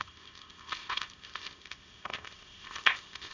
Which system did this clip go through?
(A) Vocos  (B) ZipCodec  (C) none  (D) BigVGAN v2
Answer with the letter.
B